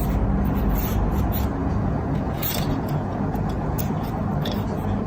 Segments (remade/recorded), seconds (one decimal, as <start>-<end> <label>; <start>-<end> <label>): 0.0-1.6 recorded; 1.6-4.1 remade; 4.1-5.1 recorded